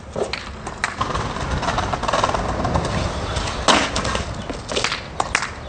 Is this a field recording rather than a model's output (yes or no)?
yes